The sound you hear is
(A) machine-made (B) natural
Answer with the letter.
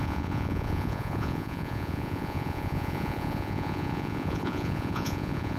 A